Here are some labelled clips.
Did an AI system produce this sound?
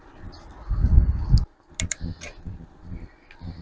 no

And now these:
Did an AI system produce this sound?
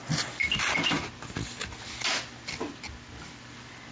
no